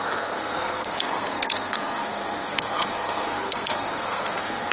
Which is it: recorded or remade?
remade